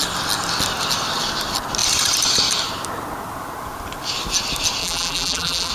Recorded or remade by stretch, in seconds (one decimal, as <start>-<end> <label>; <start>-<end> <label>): 0.0-4.8 recorded; 4.8-5.7 remade